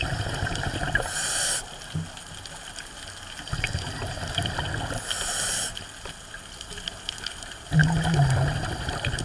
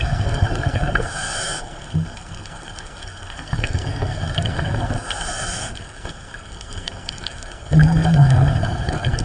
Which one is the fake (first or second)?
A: second